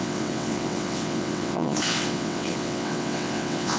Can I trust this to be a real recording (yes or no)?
no